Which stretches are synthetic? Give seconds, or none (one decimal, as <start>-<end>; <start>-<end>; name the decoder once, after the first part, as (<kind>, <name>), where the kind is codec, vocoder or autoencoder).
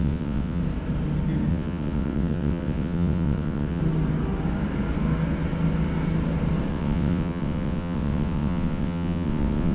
0.0-0.6 (vocoder, WaveNeXt); 1.5-3.8; 6.7-9.7